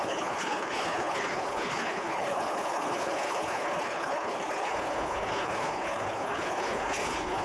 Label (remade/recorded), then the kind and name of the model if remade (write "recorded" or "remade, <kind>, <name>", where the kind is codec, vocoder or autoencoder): remade, codec, HILCodec